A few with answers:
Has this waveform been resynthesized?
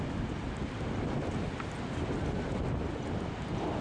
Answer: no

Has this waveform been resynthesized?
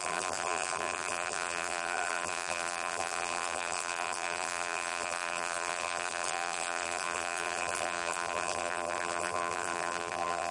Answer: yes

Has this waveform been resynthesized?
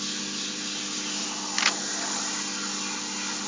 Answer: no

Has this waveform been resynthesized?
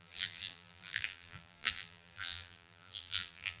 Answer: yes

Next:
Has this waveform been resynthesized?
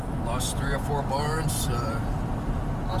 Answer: no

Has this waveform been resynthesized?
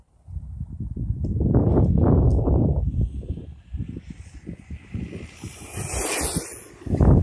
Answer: no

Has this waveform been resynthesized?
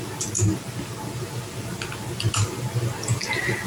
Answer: no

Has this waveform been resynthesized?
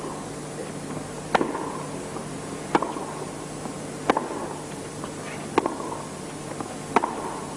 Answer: no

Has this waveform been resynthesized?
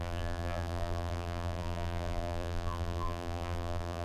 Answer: yes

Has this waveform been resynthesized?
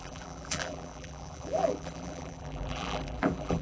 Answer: yes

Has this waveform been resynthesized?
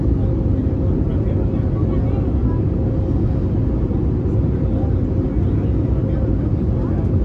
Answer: no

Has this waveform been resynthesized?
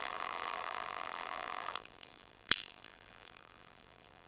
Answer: yes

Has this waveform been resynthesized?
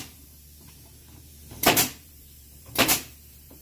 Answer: yes